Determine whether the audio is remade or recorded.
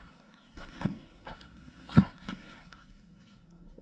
remade